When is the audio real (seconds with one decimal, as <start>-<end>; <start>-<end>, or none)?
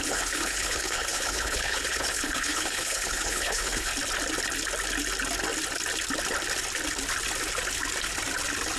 3.9-8.8